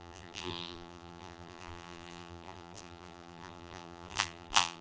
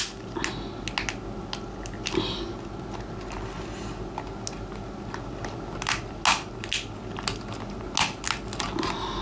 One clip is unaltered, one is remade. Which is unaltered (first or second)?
second